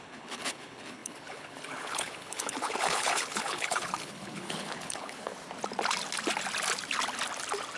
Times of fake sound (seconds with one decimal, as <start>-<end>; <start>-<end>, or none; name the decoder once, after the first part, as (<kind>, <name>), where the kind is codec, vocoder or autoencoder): 0.0-5.3 (codec, HILCodec)